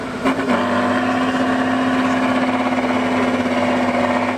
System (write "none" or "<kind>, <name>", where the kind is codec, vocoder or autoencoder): none